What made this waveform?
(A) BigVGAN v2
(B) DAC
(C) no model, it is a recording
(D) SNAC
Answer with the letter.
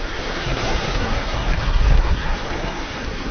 D